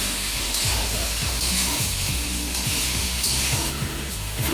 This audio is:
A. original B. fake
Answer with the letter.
B